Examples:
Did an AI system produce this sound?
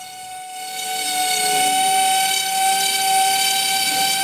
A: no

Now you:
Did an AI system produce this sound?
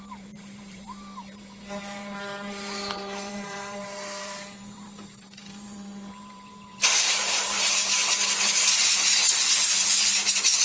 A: yes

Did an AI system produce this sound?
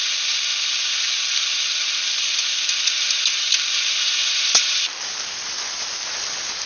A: no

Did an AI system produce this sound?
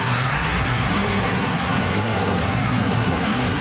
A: yes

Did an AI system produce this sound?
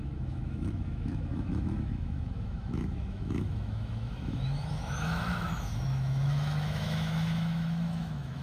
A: yes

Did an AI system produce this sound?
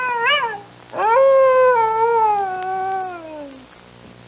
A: no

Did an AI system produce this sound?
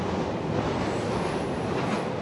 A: no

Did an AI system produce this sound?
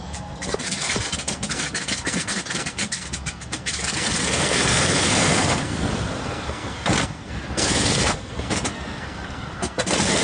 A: yes